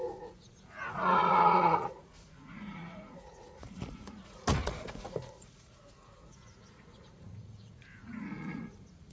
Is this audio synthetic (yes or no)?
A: yes